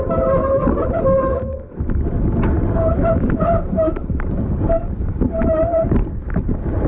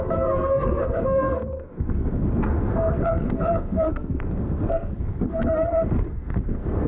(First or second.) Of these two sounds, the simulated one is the second